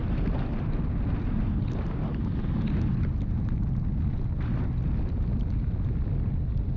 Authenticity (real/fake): real